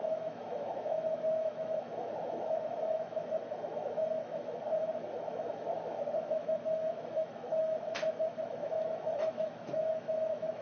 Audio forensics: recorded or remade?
remade